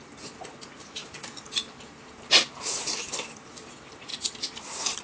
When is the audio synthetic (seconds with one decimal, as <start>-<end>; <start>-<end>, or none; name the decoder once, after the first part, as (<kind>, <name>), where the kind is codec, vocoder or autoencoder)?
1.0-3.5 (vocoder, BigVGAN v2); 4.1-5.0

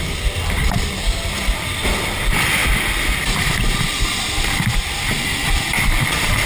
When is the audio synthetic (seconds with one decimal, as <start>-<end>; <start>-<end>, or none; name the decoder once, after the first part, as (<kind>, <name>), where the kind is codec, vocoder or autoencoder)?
none

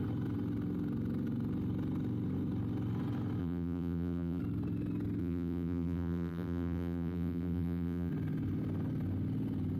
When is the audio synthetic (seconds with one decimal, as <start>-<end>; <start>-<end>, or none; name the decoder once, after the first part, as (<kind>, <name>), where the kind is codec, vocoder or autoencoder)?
3.4-4.4 (vocoder, BigVGAN v2); 5.2-8.1